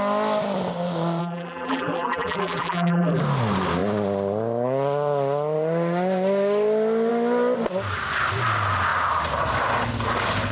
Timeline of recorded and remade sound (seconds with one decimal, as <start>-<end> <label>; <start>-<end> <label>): 0.0-1.2 recorded; 1.2-3.2 remade; 3.2-10.5 recorded